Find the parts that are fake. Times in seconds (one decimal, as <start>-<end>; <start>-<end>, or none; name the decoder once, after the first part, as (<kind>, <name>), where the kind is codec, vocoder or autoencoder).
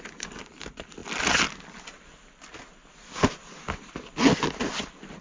none